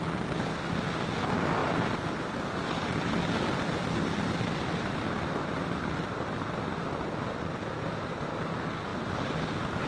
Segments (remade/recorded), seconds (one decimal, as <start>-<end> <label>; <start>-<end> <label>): 0.0-9.9 recorded

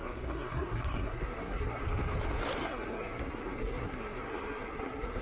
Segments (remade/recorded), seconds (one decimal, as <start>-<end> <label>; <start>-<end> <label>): 0.0-1.8 remade; 1.8-2.6 recorded; 2.6-5.2 remade

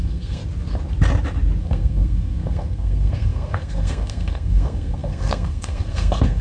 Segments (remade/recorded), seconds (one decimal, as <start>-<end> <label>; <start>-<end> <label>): 0.0-0.4 remade; 0.4-1.6 recorded; 1.6-6.4 remade

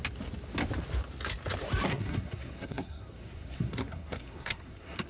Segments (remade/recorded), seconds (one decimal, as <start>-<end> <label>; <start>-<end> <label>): 0.0-1.9 recorded; 1.9-5.1 remade

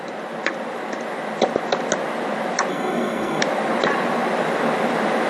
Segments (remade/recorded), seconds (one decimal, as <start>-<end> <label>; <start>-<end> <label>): 0.0-2.7 recorded; 2.7-3.4 remade; 3.4-5.3 recorded

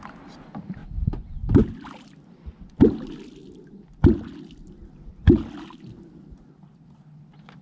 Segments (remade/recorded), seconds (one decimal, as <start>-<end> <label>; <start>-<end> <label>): 0.0-7.6 recorded

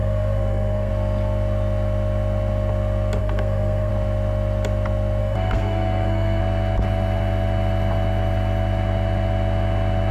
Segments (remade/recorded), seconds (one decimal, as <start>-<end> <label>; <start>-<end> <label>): 0.0-0.9 remade; 0.9-3.2 recorded; 3.2-3.9 remade; 3.9-5.2 recorded; 5.2-6.4 remade; 6.4-10.1 recorded

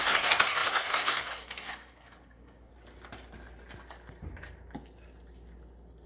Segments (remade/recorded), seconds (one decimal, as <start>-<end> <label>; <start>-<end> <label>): 0.0-2.7 remade; 2.7-6.1 recorded